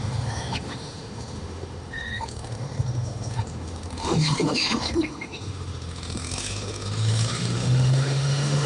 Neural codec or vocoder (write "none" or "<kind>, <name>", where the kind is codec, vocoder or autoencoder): autoencoder, DAC-VAE